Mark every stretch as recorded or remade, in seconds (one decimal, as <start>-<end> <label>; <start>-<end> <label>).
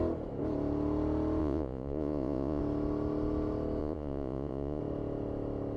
0.0-1.4 recorded; 1.4-2.6 remade; 2.6-3.8 recorded; 3.8-4.8 remade; 4.8-5.8 recorded